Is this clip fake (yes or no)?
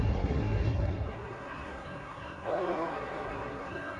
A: yes